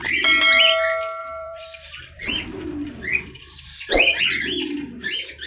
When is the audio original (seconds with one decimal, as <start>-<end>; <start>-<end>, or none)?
0.0-1.2; 4.2-5.5